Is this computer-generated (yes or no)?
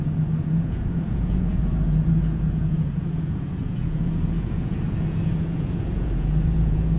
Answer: yes